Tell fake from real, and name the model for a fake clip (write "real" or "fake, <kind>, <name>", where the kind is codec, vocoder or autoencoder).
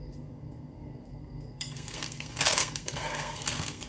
fake, codec, SNAC